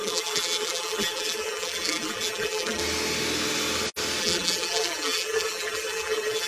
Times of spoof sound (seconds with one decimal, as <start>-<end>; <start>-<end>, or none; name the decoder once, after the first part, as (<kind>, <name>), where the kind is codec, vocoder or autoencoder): 0.0-2.8 (vocoder, BigVGAN v2); 4.2-6.5